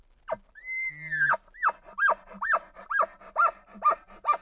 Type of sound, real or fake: real